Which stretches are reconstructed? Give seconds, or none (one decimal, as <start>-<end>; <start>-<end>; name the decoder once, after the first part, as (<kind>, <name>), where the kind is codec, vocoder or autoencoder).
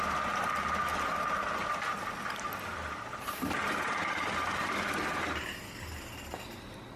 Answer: none